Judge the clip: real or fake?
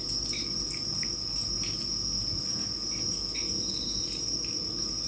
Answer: real